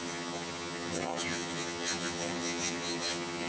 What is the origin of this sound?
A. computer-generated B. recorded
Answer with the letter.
A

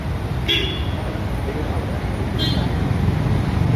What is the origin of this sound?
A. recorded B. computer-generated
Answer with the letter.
A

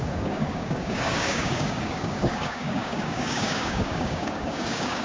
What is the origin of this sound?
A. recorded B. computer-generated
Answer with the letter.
B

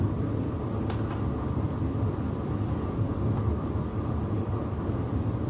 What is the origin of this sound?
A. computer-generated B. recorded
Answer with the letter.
A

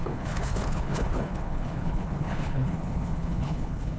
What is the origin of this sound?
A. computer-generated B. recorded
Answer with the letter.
A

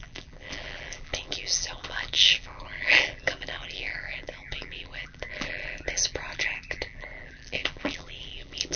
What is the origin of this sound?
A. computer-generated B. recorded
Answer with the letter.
A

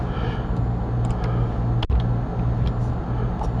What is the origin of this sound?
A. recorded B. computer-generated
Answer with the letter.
A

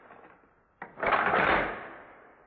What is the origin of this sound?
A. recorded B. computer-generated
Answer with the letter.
A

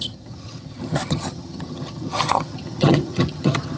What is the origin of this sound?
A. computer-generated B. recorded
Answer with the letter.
A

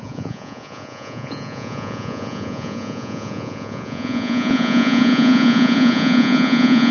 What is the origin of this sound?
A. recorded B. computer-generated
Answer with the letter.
B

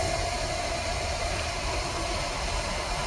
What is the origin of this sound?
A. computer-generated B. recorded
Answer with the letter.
B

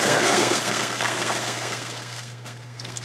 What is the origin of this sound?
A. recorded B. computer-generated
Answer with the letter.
B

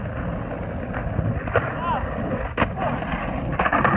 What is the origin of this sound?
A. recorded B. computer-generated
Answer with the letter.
A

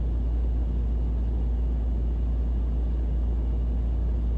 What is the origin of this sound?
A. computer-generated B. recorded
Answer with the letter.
B